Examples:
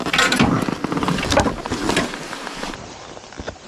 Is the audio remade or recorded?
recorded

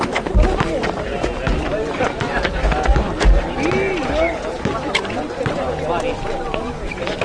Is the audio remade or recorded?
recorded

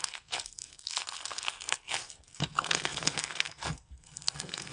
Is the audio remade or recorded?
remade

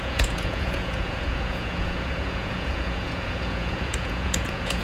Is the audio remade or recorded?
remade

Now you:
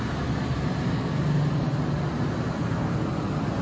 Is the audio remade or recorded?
recorded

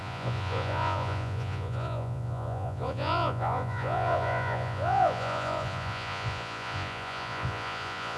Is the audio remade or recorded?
remade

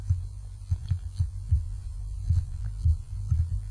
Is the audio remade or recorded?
remade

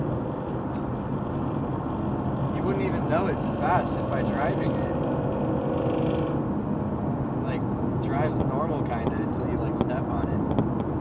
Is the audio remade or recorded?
recorded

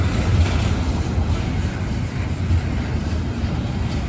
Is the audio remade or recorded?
remade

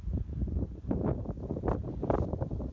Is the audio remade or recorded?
remade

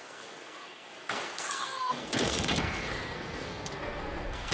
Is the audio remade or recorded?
remade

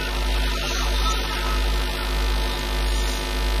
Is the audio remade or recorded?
recorded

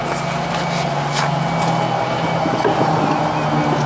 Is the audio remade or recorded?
recorded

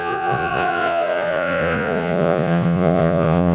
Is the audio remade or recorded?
remade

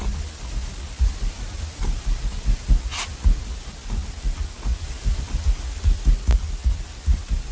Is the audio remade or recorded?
recorded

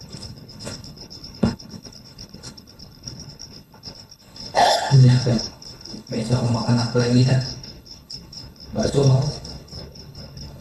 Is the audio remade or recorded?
remade